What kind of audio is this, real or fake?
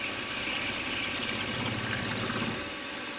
fake